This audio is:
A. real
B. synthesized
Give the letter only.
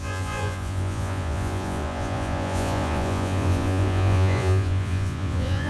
B